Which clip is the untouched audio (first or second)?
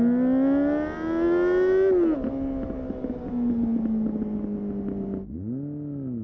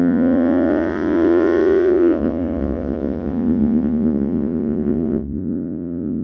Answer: first